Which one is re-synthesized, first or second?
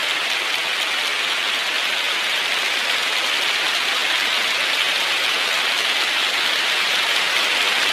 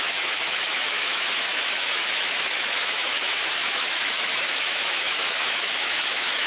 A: second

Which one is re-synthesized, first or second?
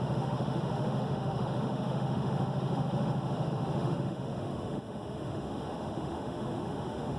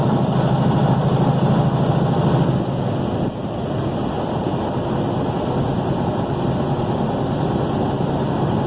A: first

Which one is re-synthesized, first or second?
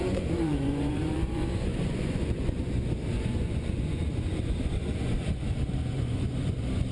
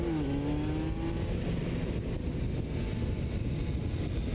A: first